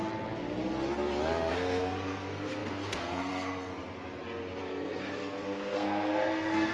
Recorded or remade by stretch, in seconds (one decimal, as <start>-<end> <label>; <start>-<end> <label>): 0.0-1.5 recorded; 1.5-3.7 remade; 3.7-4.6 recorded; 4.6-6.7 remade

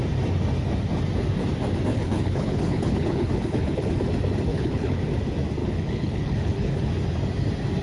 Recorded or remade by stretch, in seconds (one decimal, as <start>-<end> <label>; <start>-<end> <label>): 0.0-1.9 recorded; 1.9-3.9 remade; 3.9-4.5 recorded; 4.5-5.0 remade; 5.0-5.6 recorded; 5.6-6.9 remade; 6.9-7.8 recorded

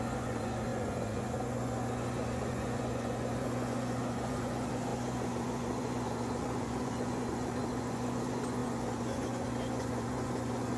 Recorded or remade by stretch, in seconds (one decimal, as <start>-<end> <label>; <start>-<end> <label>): 0.0-10.8 remade

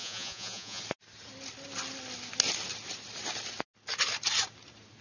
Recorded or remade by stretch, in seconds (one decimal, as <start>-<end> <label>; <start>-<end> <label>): 0.0-0.8 remade; 0.8-5.0 recorded

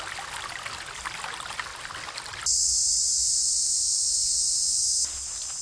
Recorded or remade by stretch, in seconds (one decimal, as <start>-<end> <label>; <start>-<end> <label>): 0.0-5.6 recorded

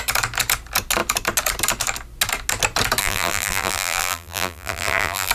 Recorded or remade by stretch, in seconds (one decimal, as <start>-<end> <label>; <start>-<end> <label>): 0.0-3.0 recorded; 3.0-5.3 remade

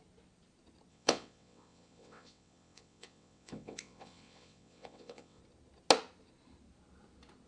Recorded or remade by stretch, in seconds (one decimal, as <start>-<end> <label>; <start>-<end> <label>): 0.0-0.9 recorded; 0.9-5.4 remade; 5.4-7.5 recorded